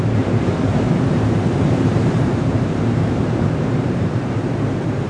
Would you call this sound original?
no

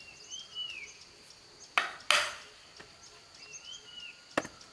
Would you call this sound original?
yes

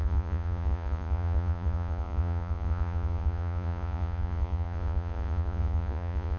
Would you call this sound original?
no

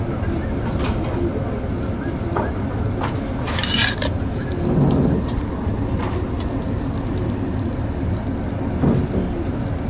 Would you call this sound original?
yes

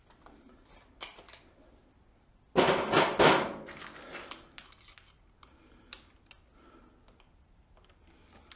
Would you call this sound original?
yes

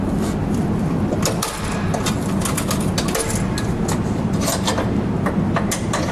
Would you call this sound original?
yes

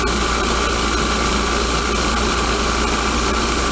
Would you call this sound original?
yes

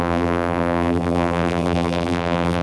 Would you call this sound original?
no